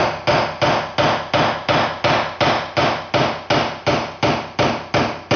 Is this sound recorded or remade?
recorded